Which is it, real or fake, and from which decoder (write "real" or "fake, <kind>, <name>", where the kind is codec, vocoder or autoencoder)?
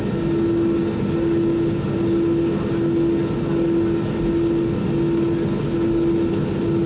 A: real